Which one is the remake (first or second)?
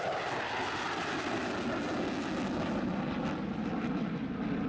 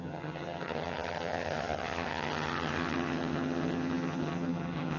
second